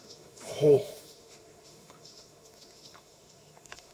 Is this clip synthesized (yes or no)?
yes